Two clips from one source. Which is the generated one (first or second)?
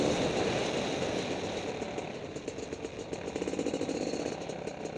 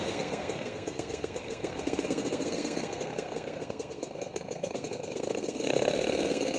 second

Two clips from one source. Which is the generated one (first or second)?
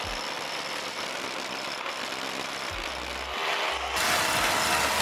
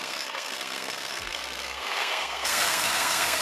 second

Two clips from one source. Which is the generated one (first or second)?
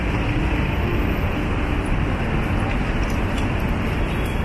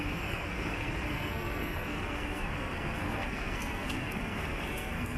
second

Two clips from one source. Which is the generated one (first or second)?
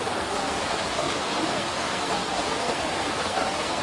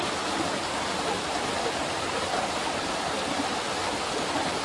first